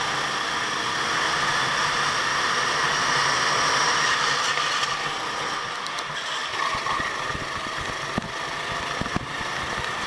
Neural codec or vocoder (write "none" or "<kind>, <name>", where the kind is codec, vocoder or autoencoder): none